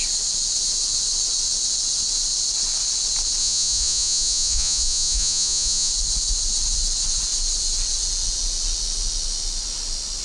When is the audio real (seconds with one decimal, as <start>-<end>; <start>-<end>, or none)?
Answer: 0.0-3.4; 5.9-10.2

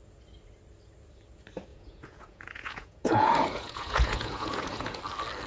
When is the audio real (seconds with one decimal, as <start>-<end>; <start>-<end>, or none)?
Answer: 0.0-1.7; 5.0-5.5

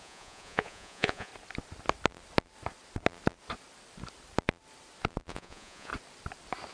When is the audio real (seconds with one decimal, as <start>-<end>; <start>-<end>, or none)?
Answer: 1.3-5.3; 5.9-6.7

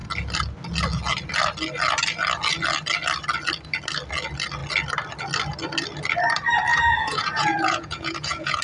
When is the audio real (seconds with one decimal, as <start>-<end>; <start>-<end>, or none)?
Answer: 0.0-6.7

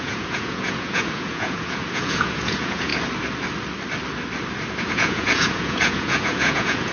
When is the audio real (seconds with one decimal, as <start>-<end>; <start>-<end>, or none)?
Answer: 2.9-4.8

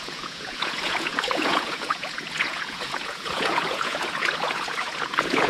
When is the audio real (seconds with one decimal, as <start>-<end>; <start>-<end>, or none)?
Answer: none

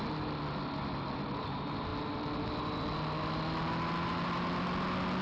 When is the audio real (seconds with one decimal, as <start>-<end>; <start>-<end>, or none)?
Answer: 0.0-5.2